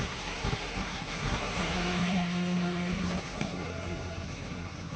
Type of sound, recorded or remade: remade